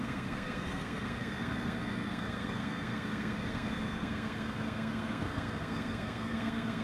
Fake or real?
fake